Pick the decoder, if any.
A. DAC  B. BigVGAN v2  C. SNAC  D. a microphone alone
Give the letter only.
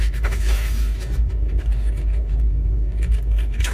A